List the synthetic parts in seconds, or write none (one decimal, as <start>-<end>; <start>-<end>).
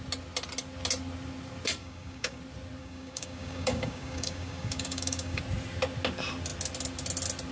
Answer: 1.8-2.4; 2.8-5.4